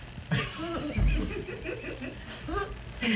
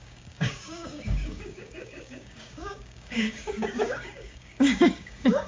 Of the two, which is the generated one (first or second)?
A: second